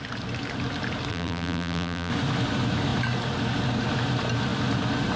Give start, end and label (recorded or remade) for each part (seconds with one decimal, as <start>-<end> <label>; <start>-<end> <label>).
0.0-1.1 recorded; 1.1-2.1 remade; 2.1-5.2 recorded